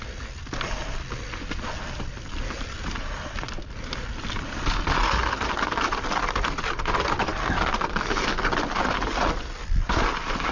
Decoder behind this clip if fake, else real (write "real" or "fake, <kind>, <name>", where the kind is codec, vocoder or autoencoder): real